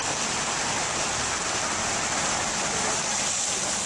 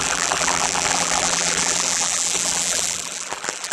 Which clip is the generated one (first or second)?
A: second